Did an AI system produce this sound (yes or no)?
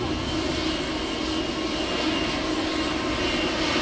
no